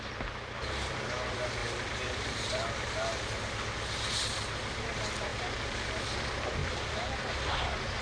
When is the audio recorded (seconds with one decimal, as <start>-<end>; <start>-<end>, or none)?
0.0-1.6; 3.3-5.3; 5.9-6.6; 7.2-8.0